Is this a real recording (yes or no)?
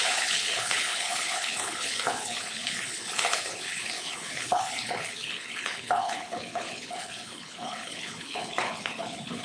no